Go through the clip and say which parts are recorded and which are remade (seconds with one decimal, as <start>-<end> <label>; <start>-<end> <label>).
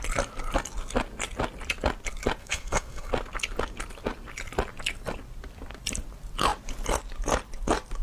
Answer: 0.0-2.4 recorded; 2.4-3.1 remade; 3.1-8.0 recorded